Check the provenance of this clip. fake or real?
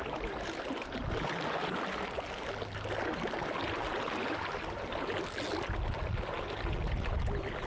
real